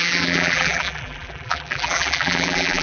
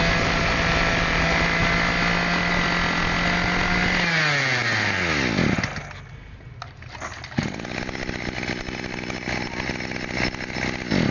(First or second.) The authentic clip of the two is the second